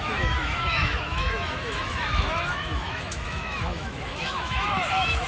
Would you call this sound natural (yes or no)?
no